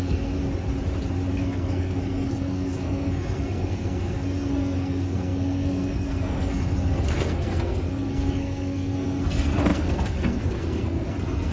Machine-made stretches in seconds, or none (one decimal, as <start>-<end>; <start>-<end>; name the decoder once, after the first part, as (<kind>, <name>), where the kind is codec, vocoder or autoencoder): 0.0-0.4 (codec, SNAC); 1.3-11.5